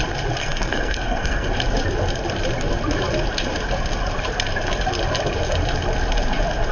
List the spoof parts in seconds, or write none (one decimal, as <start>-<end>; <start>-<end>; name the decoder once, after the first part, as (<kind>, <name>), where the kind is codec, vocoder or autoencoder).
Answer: 0.4-1.5 (codec, SNAC)

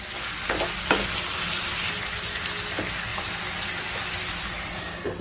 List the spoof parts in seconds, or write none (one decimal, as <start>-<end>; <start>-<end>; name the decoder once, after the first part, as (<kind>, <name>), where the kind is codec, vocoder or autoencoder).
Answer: none

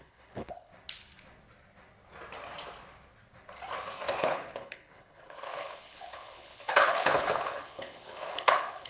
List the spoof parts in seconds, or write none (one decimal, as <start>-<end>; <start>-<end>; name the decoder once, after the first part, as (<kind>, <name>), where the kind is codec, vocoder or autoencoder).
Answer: 0.0-0.7 (codec, HILCodec); 4.2-8.9